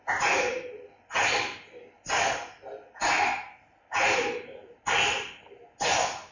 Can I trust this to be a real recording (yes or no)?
yes